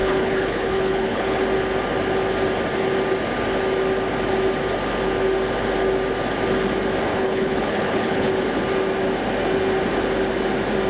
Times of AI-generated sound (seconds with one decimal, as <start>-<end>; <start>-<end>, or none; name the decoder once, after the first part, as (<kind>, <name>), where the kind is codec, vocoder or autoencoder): 0.0-1.4 (codec, HILCodec); 7.1-8.3